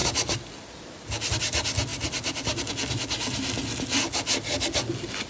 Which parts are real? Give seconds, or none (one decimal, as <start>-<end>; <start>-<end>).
0.0-5.3